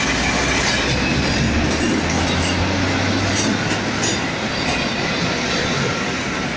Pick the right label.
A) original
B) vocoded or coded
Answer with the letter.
A